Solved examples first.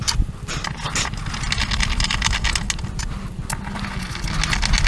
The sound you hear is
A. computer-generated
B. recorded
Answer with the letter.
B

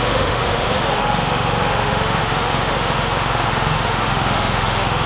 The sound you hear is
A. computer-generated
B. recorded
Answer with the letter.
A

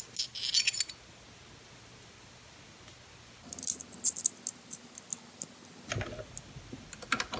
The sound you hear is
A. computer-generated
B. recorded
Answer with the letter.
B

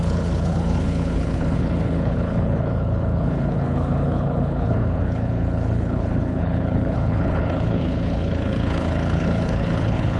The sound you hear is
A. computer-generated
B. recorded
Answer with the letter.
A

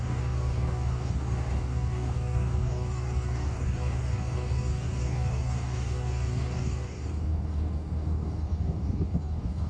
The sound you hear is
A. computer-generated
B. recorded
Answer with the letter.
A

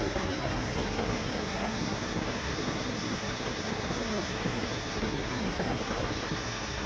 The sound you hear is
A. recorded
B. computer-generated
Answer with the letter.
B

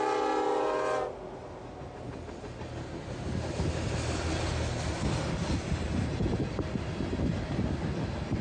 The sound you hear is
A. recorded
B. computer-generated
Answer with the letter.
A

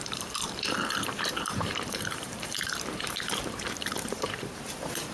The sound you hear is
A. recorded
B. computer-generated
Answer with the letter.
B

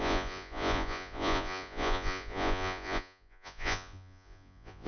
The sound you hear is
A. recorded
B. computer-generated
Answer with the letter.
B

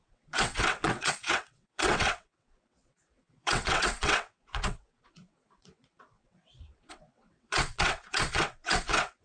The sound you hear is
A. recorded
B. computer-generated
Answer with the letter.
B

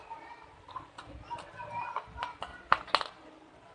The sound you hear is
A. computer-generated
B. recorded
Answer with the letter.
B